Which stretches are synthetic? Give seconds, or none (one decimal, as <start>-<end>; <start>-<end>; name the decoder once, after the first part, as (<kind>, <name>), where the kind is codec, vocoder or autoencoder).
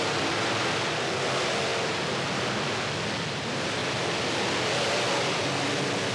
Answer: 1.7-2.7 (vocoder, BigVGAN v2)